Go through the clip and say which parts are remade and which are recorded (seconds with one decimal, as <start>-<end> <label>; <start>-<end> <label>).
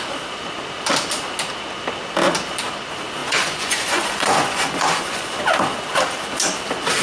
0.0-3.2 recorded; 3.2-5.4 remade; 5.4-7.0 recorded